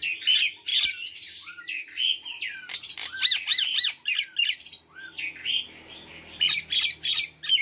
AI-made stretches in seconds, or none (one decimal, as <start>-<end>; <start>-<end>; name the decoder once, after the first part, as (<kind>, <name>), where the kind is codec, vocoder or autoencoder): none